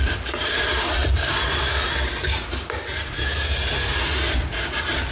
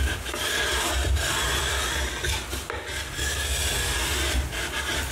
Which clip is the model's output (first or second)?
first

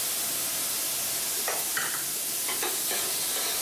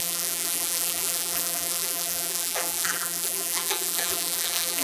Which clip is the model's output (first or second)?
second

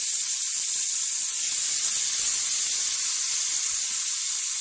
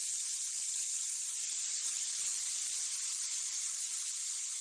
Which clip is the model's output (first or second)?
second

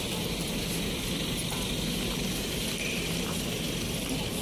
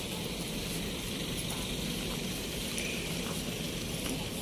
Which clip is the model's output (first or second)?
second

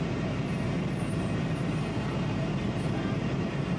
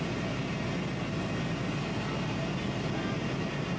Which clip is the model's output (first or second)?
first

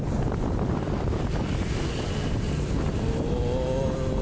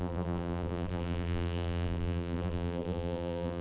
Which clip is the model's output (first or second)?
second